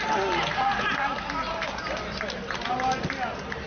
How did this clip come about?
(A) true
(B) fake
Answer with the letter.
A